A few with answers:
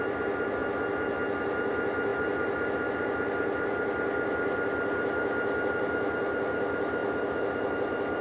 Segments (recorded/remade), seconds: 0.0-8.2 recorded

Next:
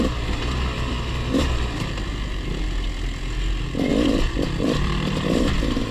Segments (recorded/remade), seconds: 0.0-3.9 recorded; 3.9-5.5 remade; 5.5-5.9 recorded

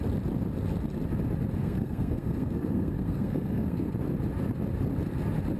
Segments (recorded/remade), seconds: 0.0-1.6 recorded; 1.6-3.9 remade; 3.9-5.6 recorded